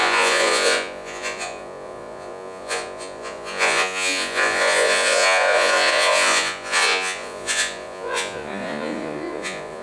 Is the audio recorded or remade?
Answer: remade